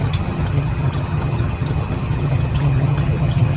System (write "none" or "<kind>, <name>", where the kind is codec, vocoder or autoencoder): vocoder, HiFi-GAN